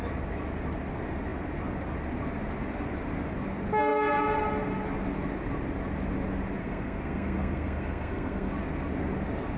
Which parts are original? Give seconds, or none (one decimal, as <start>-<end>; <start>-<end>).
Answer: 0.0-6.6; 8.5-9.6